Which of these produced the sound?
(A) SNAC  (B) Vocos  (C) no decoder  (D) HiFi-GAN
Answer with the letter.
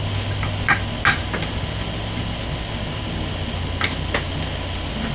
C